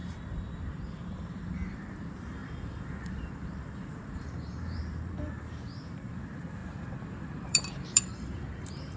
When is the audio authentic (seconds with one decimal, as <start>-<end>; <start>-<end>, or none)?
none